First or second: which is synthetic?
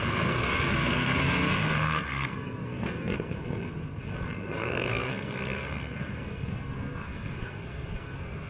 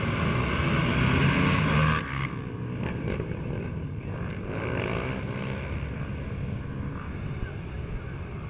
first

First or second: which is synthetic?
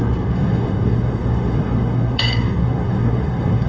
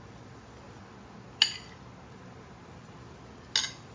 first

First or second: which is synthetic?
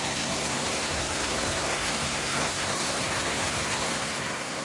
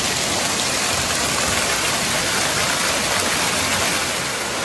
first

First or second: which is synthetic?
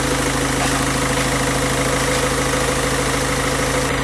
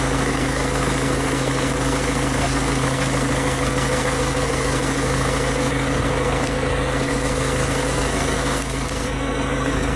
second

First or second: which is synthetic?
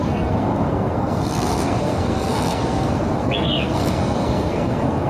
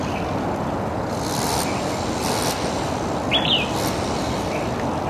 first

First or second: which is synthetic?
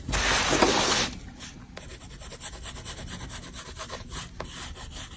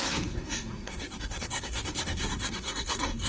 second